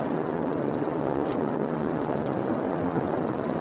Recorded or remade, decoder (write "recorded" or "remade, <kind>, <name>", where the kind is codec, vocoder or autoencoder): remade, vocoder, WaveNeXt